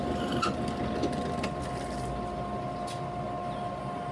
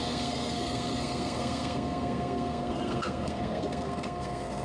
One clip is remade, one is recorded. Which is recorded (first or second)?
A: first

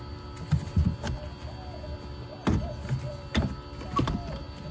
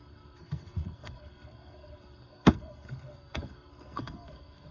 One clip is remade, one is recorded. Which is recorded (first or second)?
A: first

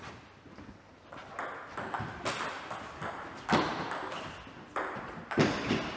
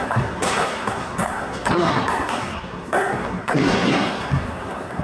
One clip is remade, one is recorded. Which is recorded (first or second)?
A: first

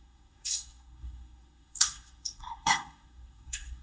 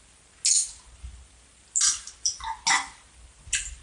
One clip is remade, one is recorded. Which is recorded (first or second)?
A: second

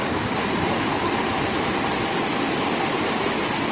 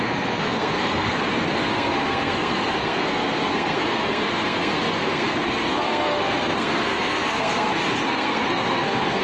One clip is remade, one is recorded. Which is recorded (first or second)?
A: first